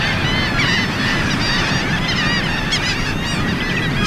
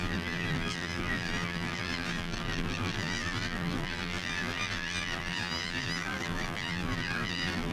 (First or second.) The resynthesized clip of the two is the second